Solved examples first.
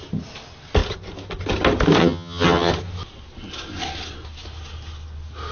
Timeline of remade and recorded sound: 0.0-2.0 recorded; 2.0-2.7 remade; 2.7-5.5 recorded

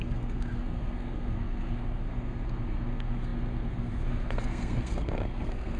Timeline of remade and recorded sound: 0.0-5.8 remade

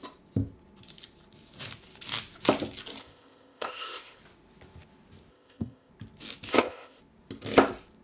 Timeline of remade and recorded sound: 0.0-3.0 recorded; 3.0-4.2 remade; 4.2-5.3 recorded; 5.3-5.9 remade; 5.9-6.5 recorded; 6.5-7.0 remade; 7.0-8.0 recorded